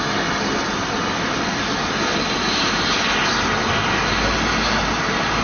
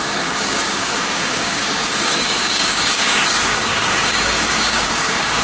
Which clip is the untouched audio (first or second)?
first